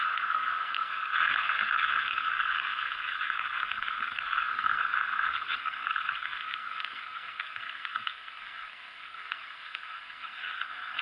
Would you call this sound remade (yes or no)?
yes